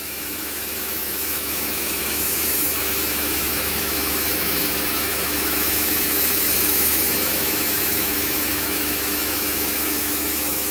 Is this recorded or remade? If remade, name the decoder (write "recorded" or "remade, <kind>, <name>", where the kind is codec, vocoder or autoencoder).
remade, autoencoder, DAC-VAE